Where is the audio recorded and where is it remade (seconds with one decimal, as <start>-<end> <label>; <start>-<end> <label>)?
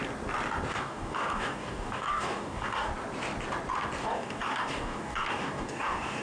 0.0-0.7 recorded; 0.7-2.9 remade; 2.9-4.0 recorded; 4.0-6.2 remade